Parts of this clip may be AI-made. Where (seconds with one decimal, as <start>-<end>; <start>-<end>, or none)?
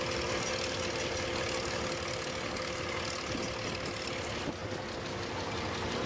none